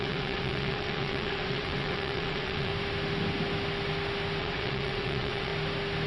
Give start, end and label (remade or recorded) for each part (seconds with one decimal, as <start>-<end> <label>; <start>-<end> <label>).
0.0-2.7 remade; 2.7-4.4 recorded; 4.4-5.5 remade; 5.5-6.1 recorded